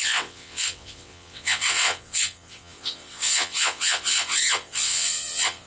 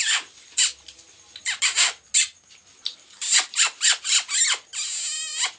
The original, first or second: second